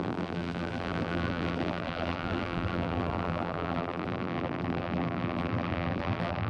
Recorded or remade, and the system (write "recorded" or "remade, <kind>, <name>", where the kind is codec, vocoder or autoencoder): remade, vocoder, BigVGAN v2